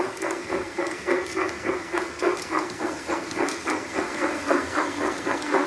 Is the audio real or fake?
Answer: fake